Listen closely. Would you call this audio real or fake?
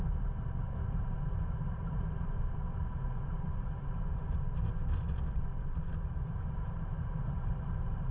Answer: fake